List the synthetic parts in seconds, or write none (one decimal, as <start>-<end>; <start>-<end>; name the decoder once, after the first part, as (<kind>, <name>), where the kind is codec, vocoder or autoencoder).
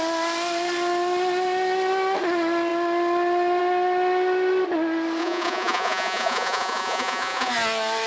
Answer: 5.2-7.5 (vocoder, Vocos)